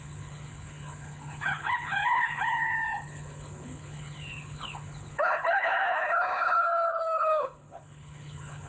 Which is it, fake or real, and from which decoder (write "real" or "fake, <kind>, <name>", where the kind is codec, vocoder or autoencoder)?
fake, codec, HILCodec